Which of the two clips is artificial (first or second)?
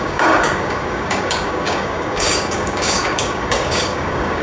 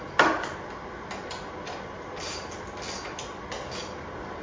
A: first